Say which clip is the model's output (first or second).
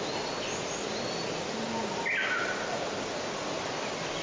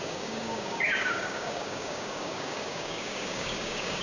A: second